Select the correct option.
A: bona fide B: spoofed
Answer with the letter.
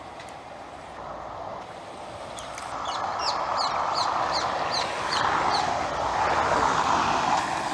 A